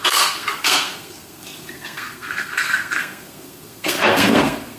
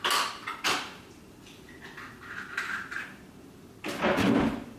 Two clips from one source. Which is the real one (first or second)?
second